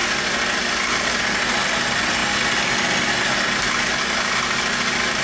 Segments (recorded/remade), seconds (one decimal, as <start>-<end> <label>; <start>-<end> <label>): 0.0-5.2 recorded